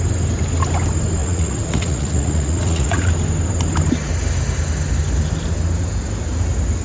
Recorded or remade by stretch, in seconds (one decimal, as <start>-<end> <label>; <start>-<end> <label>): 0.0-1.2 recorded; 1.2-3.1 remade; 3.1-6.8 recorded